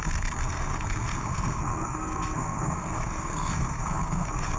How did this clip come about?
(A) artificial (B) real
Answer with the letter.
A